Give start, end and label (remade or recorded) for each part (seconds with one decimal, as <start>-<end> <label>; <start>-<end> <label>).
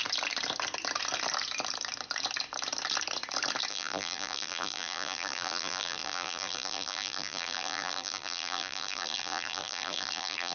0.0-3.7 recorded; 3.7-10.5 remade